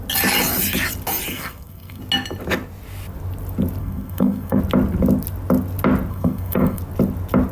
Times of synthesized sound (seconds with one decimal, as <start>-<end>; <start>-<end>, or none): 1.3-2.0; 3.8-4.6; 6.1-6.8